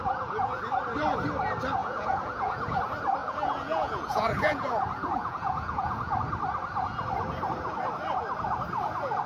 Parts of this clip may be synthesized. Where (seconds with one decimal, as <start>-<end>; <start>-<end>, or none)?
0.0-0.6; 1.8-2.8; 3.2-6.2